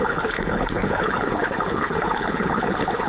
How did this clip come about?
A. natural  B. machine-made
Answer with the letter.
B